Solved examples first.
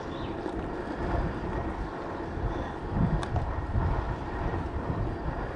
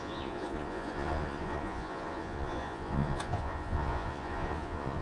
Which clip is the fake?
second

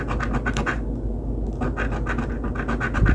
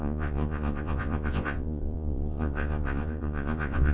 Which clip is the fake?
second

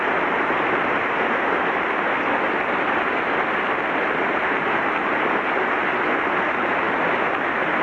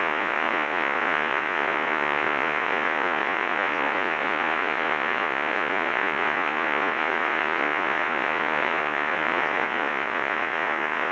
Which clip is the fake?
second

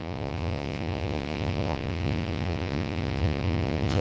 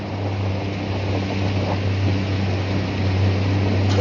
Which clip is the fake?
first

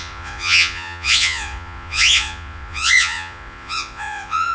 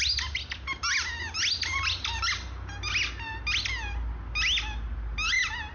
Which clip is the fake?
first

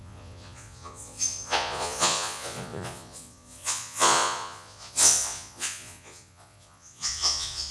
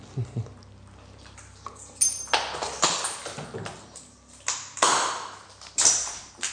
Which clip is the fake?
first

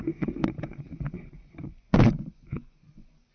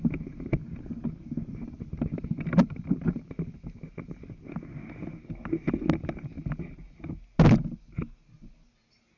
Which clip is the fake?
first